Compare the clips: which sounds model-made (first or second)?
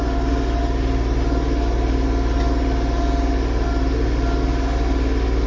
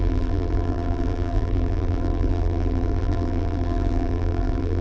second